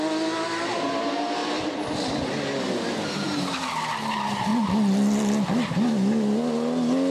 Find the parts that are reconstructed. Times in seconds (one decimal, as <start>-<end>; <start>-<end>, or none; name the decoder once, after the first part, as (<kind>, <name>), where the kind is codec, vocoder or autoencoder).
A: none